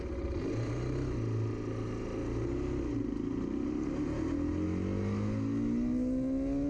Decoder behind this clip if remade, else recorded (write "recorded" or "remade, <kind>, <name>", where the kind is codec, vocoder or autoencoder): recorded